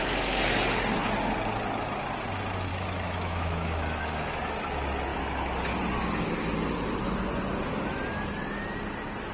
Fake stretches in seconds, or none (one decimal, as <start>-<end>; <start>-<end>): 2.7-4.4